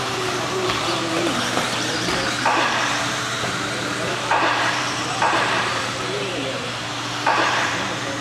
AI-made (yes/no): yes